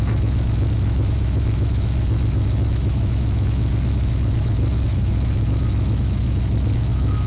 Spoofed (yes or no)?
yes